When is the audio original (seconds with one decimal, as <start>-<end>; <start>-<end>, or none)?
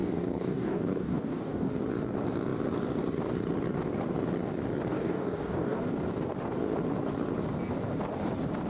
1.7-4.9; 5.8-8.7